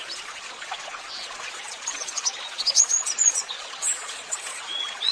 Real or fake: fake